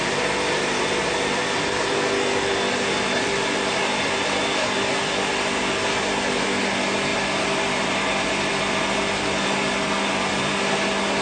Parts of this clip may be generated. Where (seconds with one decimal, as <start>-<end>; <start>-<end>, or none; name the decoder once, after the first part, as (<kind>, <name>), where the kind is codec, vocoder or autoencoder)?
none